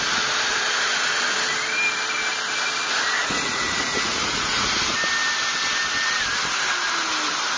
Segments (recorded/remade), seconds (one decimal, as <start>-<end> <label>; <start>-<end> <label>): 0.0-3.2 recorded; 3.2-4.7 remade; 4.7-7.6 recorded